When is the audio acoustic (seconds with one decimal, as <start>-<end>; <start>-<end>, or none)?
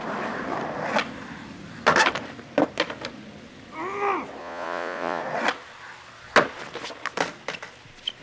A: 0.0-4.4; 5.2-8.2